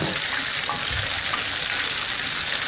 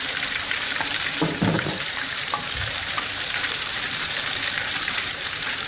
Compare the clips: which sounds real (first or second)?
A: first